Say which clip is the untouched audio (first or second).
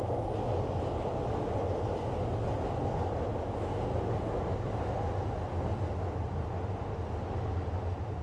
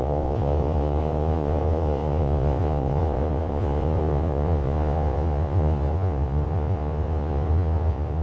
first